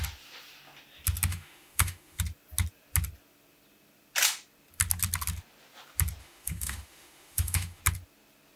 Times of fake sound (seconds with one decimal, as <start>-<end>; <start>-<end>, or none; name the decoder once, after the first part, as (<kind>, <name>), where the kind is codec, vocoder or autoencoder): 1.3-2.2 (autoencoder, DAC-VAE); 6.2-7.8